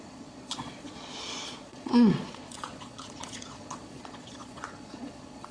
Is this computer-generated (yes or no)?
yes